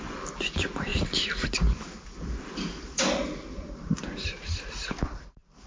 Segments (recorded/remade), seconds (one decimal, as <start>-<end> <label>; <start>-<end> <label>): 0.0-0.9 recorded; 0.9-3.9 remade; 3.9-5.7 recorded